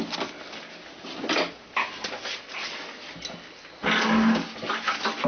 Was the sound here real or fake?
real